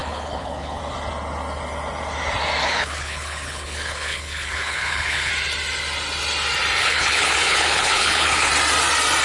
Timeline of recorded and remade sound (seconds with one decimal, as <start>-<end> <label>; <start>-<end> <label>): 0.0-0.8 remade; 0.8-2.6 recorded; 2.6-5.3 remade; 5.3-6.8 recorded; 6.8-8.5 remade; 8.5-9.2 recorded